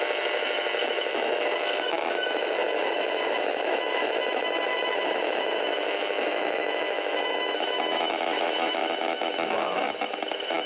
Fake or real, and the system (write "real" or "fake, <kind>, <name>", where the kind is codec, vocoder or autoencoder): fake, autoencoder, DAC-VAE